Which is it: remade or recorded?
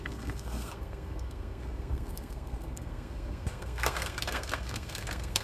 remade